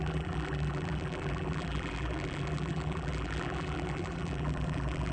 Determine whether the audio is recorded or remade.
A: remade